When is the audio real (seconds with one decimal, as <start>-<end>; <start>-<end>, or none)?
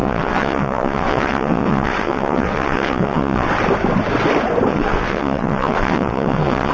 3.5-4.7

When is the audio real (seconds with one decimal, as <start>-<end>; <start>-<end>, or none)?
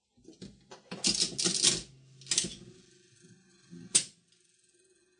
0.0-5.2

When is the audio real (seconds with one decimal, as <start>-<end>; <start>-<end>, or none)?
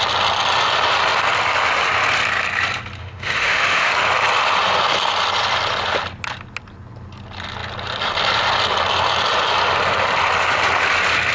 0.0-3.0; 3.9-11.3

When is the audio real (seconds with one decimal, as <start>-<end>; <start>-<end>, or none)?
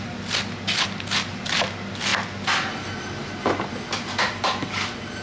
0.0-5.2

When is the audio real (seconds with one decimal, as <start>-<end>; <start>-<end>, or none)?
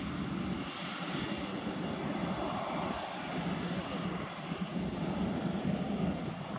0.0-6.6